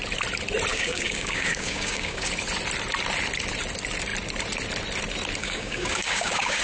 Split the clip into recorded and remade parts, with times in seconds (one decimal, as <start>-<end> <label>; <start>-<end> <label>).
0.0-0.7 recorded; 0.7-2.3 remade; 2.3-5.4 recorded; 5.4-6.6 remade